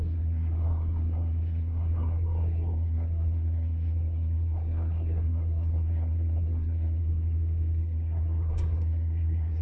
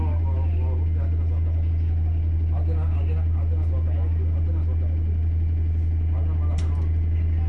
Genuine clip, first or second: second